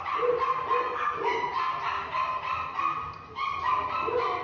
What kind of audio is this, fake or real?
real